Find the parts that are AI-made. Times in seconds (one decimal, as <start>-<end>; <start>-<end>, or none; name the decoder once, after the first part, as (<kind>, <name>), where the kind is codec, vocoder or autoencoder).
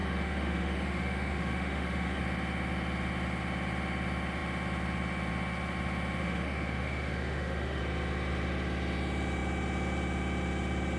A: 0.0-2.2 (autoencoder, DAC-VAE); 6.2-7.8